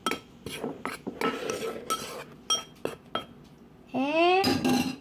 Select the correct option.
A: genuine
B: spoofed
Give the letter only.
A